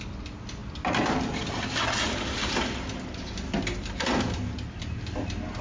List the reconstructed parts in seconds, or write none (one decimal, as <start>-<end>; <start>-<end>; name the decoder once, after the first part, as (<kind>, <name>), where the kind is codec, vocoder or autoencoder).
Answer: none